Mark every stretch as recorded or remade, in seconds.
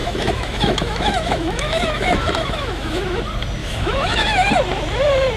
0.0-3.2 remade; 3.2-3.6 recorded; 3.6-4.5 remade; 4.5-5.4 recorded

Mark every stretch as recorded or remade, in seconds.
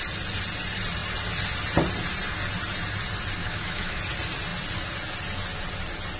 0.0-3.4 recorded; 3.4-4.0 remade; 4.0-6.2 recorded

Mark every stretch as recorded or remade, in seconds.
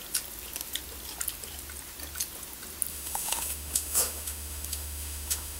0.0-2.9 recorded; 2.9-5.6 remade